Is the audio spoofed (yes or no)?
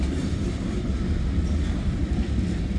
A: no